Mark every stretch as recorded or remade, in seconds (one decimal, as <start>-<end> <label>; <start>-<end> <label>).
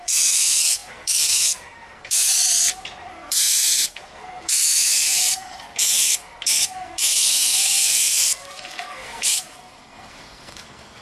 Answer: 0.0-2.3 remade; 2.3-3.1 recorded; 3.1-11.0 remade